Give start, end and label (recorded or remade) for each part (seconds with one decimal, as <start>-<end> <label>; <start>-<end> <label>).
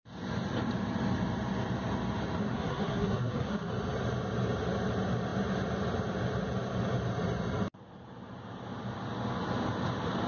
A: 0.0-2.4 recorded; 2.4-3.7 remade; 3.7-10.3 recorded